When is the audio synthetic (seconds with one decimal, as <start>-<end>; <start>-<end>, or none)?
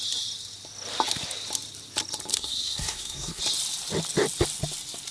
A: 2.3-3.4